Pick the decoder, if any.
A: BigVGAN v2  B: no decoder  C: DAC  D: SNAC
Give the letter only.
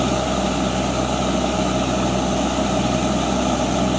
B